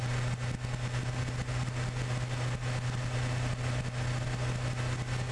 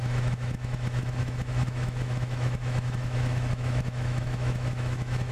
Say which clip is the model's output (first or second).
second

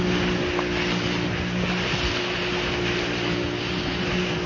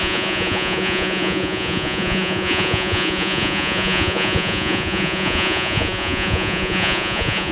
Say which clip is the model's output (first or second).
second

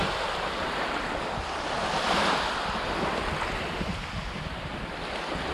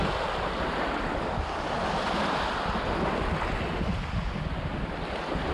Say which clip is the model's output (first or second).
first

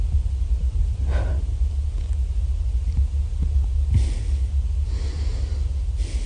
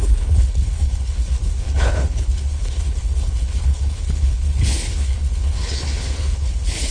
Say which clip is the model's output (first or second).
second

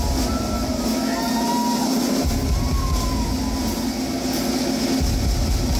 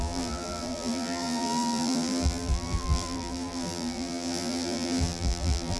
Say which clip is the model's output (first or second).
second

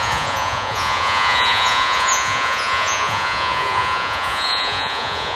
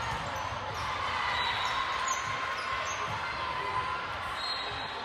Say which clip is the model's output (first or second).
first